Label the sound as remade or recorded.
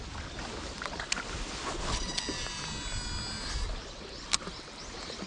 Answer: recorded